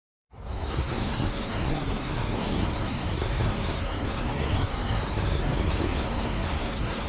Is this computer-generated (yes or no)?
yes